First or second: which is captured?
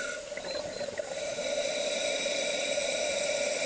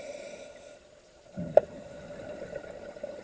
second